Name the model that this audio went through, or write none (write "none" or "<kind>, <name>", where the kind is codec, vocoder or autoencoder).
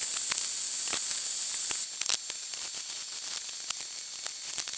none